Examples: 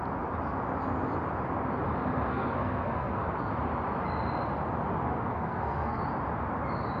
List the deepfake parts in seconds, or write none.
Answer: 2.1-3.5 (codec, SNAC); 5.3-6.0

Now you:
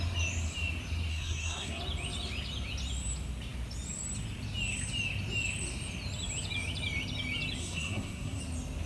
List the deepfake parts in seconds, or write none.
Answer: 1.1-1.8 (codec, SNAC); 7.6-8.4

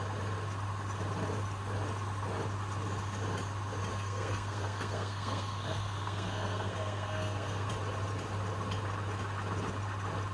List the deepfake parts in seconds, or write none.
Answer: 3.9-7.7 (codec, SNAC)

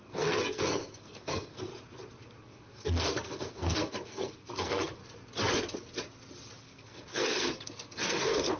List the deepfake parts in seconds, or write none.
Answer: 0.0-1.7 (codec, SNAC); 2.4-5.0; 6.6-8.6

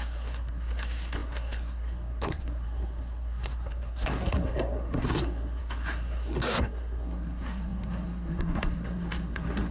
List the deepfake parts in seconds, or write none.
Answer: 0.0-9.7 (codec, SNAC)